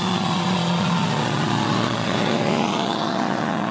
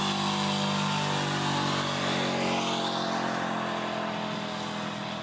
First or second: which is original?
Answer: second